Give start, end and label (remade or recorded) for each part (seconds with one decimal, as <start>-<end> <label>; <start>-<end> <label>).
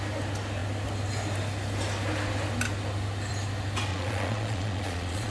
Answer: 0.0-3.9 recorded; 3.9-5.3 remade